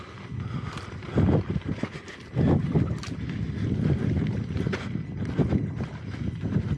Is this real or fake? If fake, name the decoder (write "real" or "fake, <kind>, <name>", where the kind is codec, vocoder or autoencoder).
real